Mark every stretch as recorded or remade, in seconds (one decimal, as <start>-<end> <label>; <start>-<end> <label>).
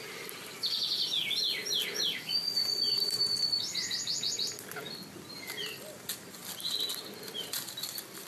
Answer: 0.0-8.3 recorded